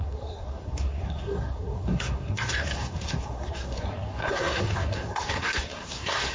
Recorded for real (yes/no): no